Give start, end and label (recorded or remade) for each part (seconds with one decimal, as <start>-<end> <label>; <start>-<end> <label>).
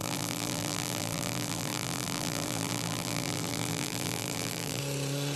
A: 0.0-4.8 remade; 4.8-5.4 recorded